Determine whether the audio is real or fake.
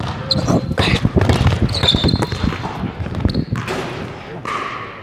real